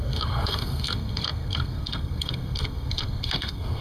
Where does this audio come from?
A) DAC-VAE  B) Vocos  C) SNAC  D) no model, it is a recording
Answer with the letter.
C